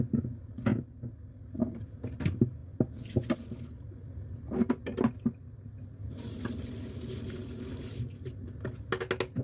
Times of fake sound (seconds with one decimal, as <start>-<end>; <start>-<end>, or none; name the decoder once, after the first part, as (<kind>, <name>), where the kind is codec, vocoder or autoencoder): none